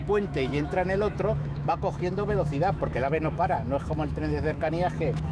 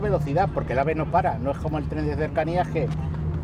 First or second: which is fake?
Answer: first